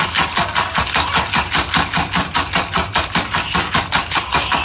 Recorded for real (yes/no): yes